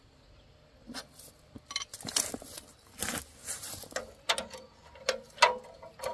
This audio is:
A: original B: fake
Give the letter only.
A